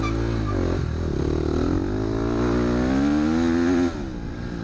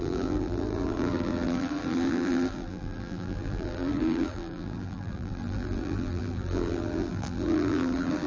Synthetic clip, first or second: second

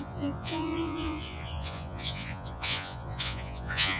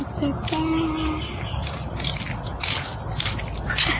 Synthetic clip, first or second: first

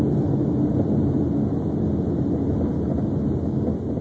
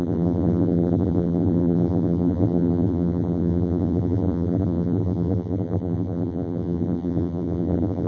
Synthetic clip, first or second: second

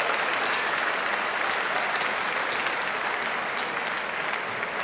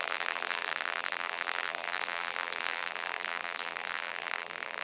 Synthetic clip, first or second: second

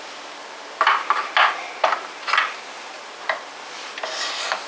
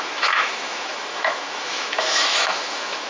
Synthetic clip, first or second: second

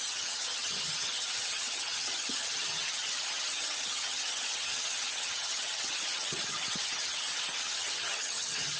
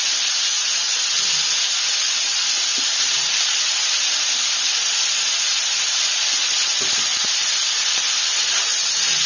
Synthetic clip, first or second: first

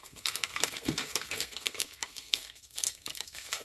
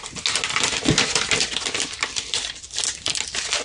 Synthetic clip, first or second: first